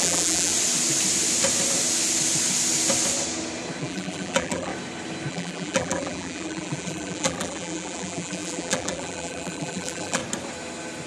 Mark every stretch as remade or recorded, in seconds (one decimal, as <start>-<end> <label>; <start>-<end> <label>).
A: 0.0-0.5 remade; 0.5-3.8 recorded; 3.8-4.7 remade; 4.7-5.3 recorded; 5.3-10.2 remade; 10.2-11.1 recorded